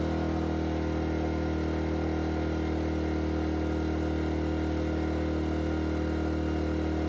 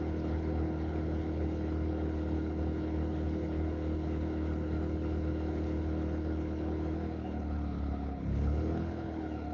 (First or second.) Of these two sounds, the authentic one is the first